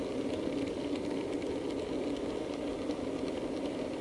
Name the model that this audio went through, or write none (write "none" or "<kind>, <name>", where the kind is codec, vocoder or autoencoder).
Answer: none